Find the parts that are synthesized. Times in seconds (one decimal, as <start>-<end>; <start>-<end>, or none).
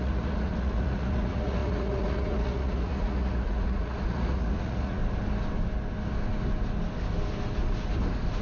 0.0-5.0